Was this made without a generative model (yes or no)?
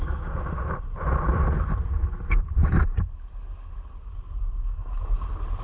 yes